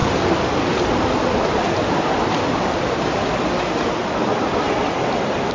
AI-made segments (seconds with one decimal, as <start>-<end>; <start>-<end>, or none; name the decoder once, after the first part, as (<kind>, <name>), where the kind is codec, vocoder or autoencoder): none